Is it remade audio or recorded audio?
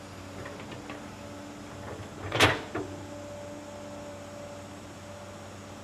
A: recorded